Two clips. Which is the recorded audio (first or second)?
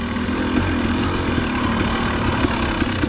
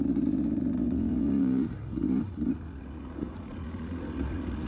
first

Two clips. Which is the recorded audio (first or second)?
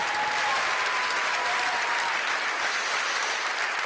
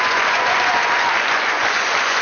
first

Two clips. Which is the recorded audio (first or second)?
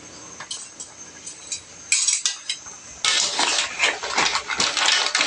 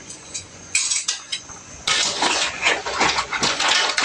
first